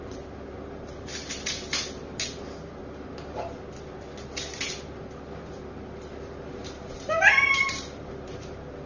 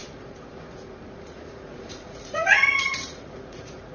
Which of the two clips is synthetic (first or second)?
second